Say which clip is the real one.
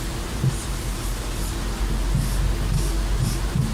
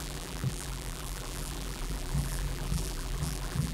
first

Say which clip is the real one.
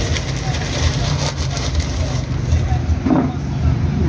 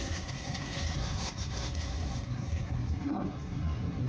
first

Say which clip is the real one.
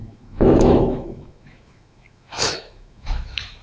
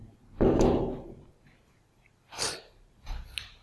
second